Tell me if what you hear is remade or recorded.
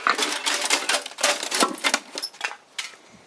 recorded